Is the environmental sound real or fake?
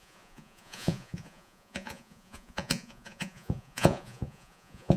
fake